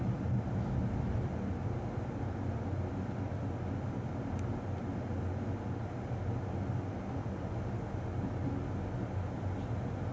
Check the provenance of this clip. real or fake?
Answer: real